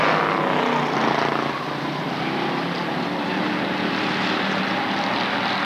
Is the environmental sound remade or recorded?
recorded